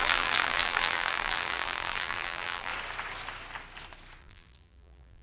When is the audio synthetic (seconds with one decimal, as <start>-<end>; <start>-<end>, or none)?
0.0-2.7; 4.2-5.2